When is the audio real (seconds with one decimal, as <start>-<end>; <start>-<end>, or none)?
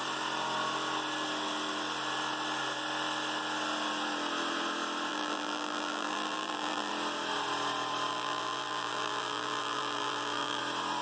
0.0-5.1; 6.9-8.1; 10.6-11.0